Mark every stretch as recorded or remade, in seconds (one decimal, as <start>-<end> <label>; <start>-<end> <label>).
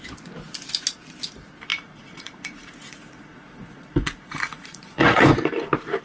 0.0-1.7 recorded; 1.7-5.3 remade; 5.3-6.0 recorded